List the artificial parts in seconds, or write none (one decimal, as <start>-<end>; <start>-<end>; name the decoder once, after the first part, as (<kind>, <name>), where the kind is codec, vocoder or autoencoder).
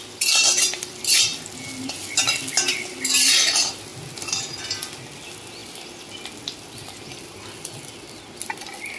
none